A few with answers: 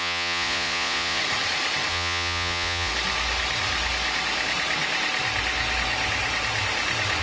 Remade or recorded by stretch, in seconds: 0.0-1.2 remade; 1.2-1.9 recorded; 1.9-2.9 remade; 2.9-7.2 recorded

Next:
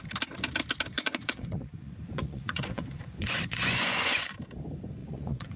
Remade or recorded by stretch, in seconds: 0.0-0.9 recorded; 0.9-4.3 remade; 4.3-5.0 recorded; 5.0-5.6 remade

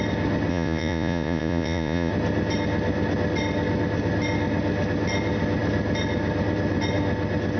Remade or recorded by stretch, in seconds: 0.0-0.5 recorded; 0.5-2.1 remade; 2.1-7.6 recorded

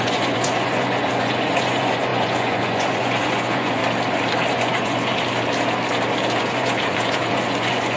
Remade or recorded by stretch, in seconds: 0.0-3.8 remade; 3.8-4.5 recorded; 4.5-5.1 remade; 5.1-6.4 recorded; 6.4-8.0 remade

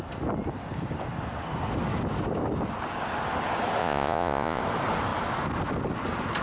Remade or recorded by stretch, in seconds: 0.0-3.8 recorded; 3.8-4.6 remade; 4.6-6.4 recorded

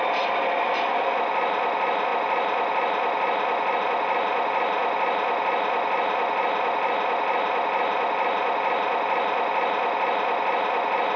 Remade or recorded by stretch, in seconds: 0.0-11.2 recorded